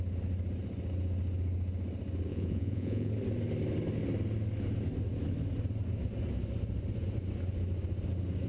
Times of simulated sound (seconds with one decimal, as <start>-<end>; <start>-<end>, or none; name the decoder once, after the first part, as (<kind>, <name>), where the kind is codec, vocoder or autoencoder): 2.3-3.1 (vocoder, Vocos)